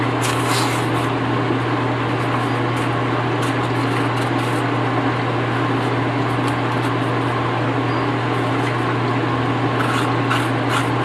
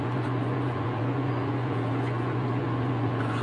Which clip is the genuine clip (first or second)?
first